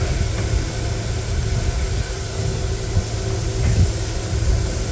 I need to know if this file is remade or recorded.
recorded